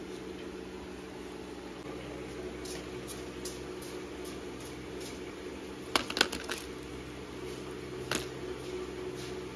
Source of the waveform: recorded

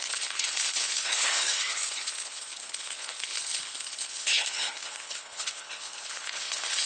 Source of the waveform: remade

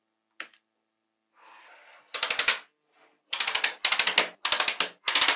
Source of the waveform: recorded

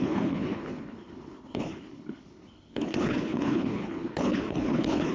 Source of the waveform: remade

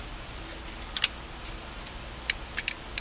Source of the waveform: recorded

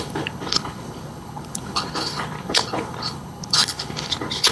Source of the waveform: remade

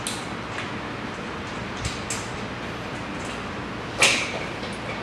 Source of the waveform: recorded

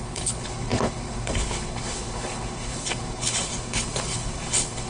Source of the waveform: remade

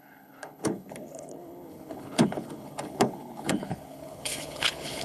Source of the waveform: remade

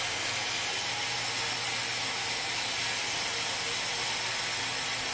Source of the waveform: recorded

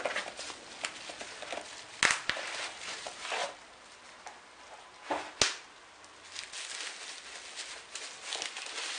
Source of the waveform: recorded